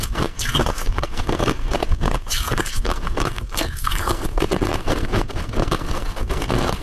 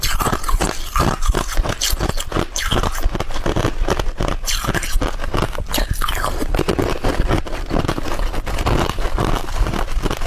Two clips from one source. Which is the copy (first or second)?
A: first